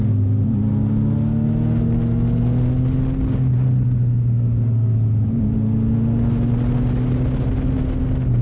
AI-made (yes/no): no